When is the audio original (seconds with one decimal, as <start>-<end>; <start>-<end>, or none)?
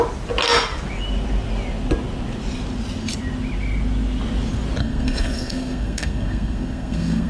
0.0-4.8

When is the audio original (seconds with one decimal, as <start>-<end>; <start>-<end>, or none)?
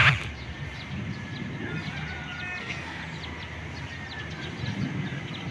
0.0-2.6; 3.0-5.5